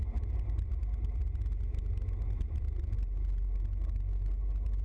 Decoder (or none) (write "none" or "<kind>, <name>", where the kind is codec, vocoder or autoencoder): none